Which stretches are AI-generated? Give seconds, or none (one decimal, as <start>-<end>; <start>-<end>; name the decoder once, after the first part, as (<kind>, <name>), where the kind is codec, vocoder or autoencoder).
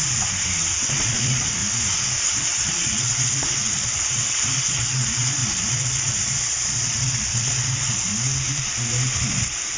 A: 0.8-1.6 (vocoder, Vocos); 2.2-8.1; 9.3-9.8